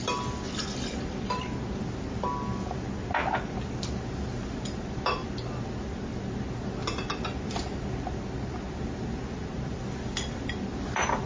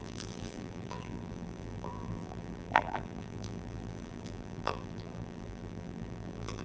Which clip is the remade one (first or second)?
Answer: second